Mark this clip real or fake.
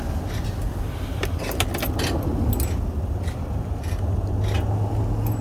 real